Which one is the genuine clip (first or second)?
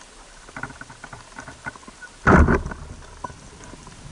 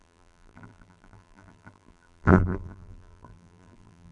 first